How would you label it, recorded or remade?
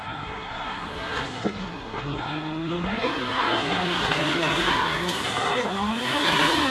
remade